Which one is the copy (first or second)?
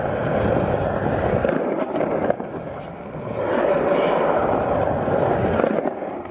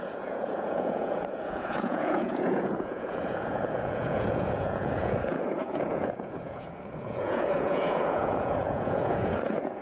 second